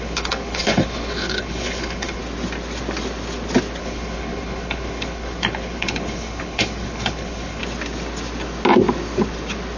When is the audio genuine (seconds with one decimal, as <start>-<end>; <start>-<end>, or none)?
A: 2.2-3.8; 7.6-9.8